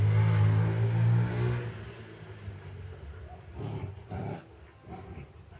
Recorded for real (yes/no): yes